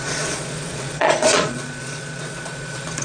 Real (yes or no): no